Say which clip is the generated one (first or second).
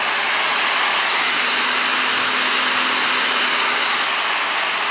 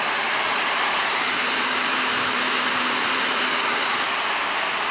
second